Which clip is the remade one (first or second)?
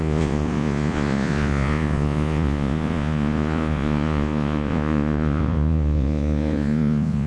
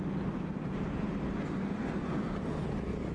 first